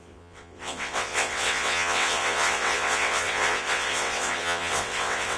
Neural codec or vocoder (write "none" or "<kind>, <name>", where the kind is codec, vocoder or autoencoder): vocoder, WaveNeXt